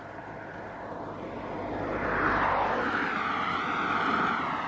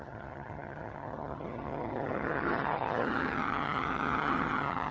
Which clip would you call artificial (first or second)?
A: second